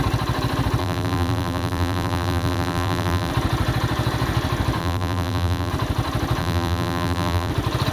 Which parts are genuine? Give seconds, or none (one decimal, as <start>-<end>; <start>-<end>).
0.0-0.8; 3.3-4.8; 5.7-6.4; 7.5-7.9